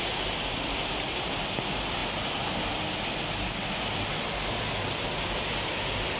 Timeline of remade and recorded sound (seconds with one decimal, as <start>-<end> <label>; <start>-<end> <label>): 0.0-6.2 recorded